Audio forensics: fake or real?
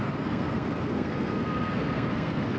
fake